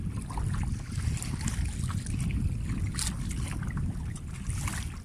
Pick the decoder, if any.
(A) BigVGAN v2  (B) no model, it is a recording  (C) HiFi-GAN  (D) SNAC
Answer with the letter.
B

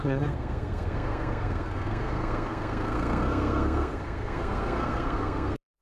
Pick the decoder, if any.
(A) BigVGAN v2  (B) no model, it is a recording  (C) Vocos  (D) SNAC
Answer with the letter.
D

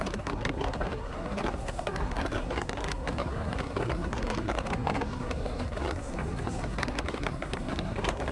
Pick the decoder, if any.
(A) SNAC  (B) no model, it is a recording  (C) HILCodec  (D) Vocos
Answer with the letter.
A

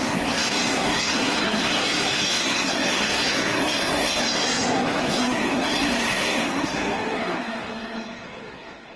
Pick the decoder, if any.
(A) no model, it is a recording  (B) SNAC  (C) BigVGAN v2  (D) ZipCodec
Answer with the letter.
B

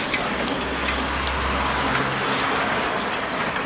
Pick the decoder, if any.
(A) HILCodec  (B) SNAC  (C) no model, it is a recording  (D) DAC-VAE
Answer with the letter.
C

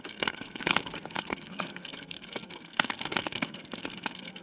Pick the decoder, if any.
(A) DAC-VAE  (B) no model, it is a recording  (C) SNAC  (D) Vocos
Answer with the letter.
C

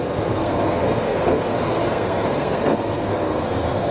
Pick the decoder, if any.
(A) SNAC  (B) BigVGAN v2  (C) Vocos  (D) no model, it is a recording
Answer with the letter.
A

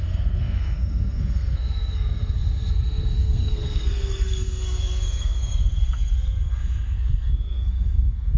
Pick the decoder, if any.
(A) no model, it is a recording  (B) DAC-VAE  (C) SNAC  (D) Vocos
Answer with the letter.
C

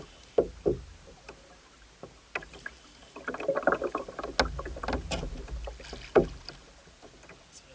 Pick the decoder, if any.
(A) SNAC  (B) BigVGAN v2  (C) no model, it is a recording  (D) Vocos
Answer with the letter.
C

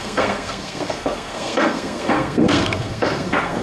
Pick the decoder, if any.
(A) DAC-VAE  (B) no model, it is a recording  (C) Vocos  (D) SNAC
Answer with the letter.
D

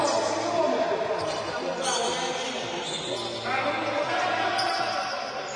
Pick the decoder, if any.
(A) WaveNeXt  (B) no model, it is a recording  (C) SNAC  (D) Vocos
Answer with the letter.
B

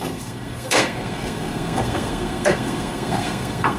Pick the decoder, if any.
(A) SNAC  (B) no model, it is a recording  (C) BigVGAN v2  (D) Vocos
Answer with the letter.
A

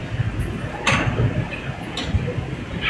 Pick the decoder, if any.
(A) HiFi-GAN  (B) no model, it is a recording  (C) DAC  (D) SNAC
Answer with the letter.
B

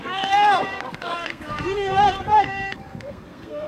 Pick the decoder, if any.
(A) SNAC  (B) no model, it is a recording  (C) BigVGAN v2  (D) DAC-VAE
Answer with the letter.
A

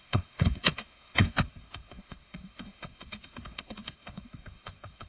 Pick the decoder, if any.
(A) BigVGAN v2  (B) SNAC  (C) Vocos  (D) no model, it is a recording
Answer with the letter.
B